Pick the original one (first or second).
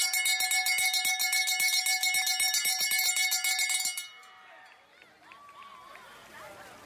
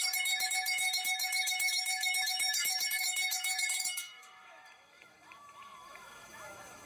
first